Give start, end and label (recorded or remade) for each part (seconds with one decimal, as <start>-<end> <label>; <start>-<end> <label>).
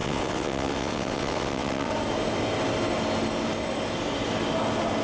0.0-1.9 remade; 1.9-5.0 recorded